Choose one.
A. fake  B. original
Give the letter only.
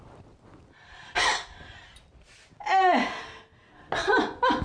B